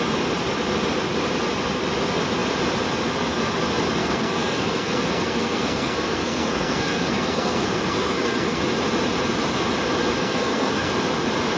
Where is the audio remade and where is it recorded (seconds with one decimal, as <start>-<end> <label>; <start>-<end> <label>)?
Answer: 0.0-4.0 recorded; 4.0-8.6 remade; 8.6-10.2 recorded; 10.2-10.9 remade; 10.9-11.6 recorded